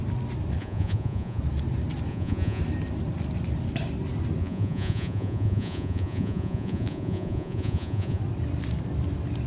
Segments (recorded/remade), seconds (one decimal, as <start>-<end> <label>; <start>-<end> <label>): 0.0-0.6 recorded; 0.6-1.4 remade; 1.4-2.1 recorded; 2.1-2.6 remade; 2.6-4.4 recorded; 4.4-8.2 remade; 8.2-9.5 recorded